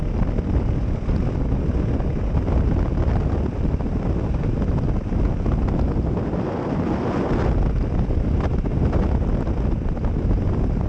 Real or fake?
real